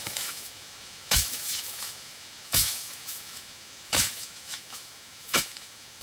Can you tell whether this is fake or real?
fake